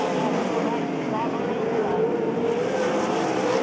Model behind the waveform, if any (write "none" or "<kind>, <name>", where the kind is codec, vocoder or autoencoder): none